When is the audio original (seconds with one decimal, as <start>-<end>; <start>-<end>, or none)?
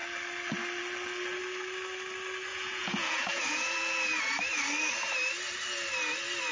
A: 0.0-2.5; 4.2-6.5